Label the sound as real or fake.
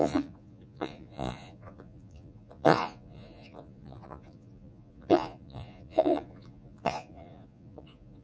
fake